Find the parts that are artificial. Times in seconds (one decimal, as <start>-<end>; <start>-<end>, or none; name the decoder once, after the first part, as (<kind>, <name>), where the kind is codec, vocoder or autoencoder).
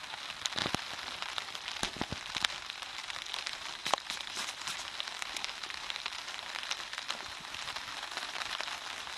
3.8-5.2 (vocoder, BigVGAN v2)